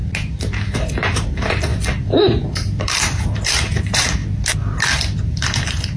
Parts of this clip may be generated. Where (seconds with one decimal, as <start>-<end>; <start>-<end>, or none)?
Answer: 0.7-1.7; 2.2-4.2; 5.2-6.0